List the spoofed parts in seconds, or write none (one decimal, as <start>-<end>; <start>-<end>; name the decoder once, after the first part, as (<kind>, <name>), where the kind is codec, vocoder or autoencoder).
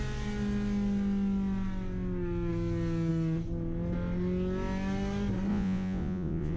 5.5-6.6 (vocoder, Vocos)